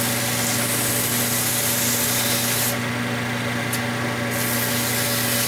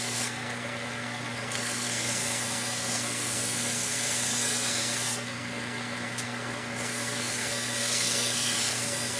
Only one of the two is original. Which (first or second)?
first